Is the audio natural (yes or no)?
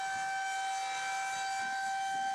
yes